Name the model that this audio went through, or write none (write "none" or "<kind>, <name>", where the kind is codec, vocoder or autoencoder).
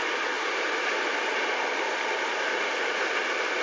none